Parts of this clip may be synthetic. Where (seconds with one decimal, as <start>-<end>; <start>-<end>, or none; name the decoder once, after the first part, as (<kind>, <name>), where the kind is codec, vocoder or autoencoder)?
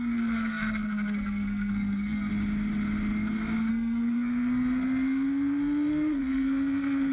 0.0-2.3 (codec, SNAC); 3.7-7.1